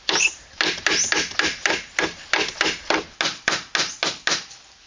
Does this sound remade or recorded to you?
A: recorded